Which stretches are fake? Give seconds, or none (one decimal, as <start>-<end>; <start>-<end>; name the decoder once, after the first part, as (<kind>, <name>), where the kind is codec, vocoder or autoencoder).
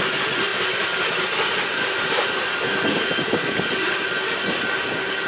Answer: 0.5-3.7 (vocoder, BigVGAN v2)